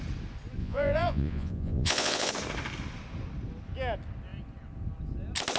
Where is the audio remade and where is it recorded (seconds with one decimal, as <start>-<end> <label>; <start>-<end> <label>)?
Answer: 0.0-0.6 recorded; 0.6-2.3 remade; 2.3-5.6 recorded